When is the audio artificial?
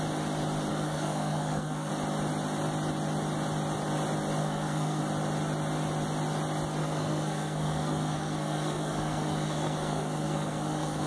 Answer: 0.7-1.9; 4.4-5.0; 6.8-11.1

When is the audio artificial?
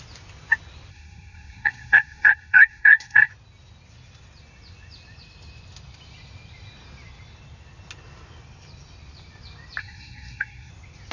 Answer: 0.9-3.3; 9.8-10.7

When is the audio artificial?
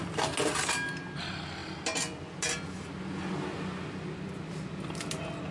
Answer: none